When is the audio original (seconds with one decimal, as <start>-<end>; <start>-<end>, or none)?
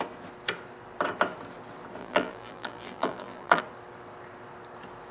0.0-2.0; 3.6-5.1